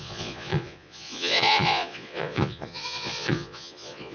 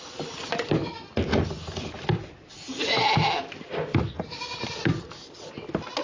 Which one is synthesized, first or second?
first